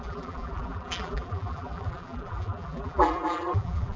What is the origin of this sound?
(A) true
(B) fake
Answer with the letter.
B